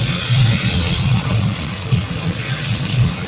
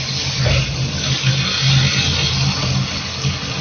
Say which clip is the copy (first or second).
first